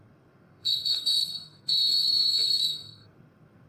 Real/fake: fake